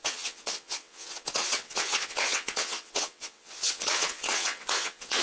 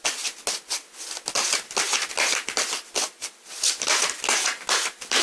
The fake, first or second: first